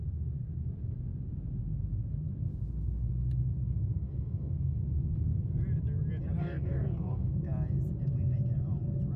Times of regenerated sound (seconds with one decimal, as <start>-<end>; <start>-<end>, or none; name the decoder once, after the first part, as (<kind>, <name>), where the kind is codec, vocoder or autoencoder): 3.9-4.8 (codec, DAC); 6.4-7.3